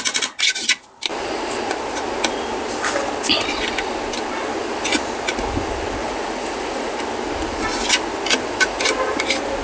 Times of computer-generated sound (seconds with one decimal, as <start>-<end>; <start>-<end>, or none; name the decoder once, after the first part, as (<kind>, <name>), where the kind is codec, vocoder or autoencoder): 6.0-7.0 (vocoder, Vocos)